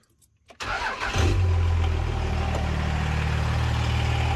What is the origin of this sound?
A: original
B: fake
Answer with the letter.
A